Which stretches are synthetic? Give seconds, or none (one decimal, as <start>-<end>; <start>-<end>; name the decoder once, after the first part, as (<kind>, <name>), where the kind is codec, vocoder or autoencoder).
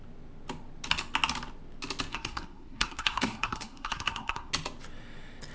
2.1-4.5 (codec, SNAC)